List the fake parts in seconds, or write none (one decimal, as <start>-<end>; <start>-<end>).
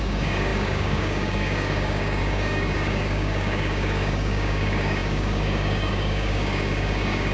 0.0-7.3